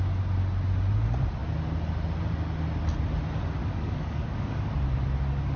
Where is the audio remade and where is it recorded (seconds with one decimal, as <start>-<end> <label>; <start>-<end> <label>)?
0.0-3.6 recorded; 3.6-4.7 remade; 4.7-5.6 recorded